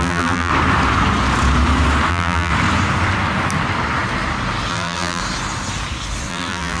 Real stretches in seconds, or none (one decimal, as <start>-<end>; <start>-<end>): 0.5-2.1; 2.5-4.7; 5.2-6.3

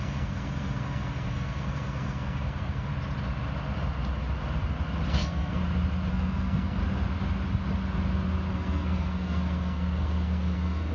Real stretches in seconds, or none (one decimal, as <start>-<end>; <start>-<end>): 2.9-5.1; 5.6-6.1; 6.8-8.5

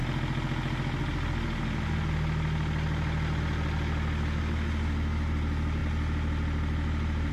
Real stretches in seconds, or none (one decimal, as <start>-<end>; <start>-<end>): 0.0-7.3

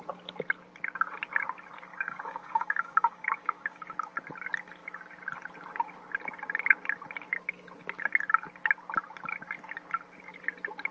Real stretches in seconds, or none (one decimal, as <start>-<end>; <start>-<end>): 0.0-1.9; 3.8-10.9

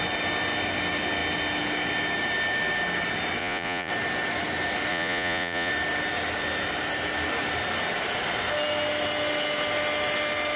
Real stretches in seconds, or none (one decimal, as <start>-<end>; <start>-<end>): 0.0-3.4; 3.9-4.9; 5.7-10.6

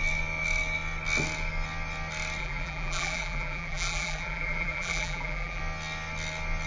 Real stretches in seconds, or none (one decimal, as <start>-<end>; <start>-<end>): 0.0-2.4; 5.6-6.7

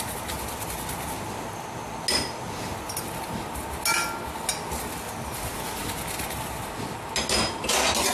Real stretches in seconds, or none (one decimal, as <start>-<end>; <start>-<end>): 0.0-8.1

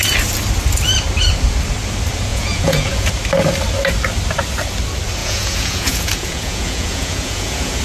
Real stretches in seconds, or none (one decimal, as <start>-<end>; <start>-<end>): 0.0-2.3; 3.1-5.2